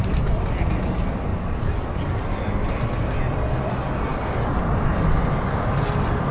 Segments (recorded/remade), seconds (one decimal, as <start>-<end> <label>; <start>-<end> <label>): 0.0-1.3 recorded; 1.3-2.3 remade; 2.3-6.3 recorded

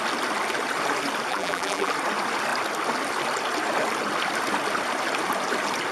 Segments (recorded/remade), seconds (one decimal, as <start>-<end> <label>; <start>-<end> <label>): 0.0-1.3 recorded; 1.3-1.9 remade; 1.9-5.9 recorded

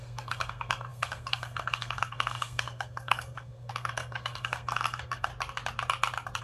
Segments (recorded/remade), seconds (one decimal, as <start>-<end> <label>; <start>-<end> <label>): 0.0-5.3 remade; 5.3-6.4 recorded

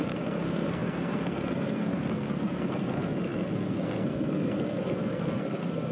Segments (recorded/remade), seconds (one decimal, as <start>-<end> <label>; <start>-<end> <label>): 0.0-5.9 remade

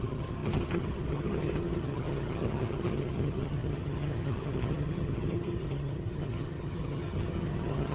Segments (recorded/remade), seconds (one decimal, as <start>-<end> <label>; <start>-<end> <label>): 0.0-7.9 remade

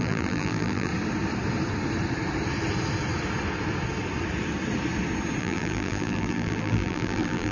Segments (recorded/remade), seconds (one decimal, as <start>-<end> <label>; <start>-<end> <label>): 0.0-0.9 remade; 0.9-5.4 recorded; 5.4-7.5 remade